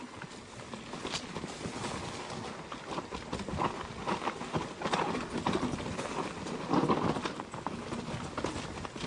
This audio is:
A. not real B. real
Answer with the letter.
B